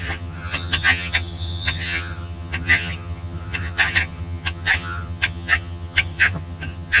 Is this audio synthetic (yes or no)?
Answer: yes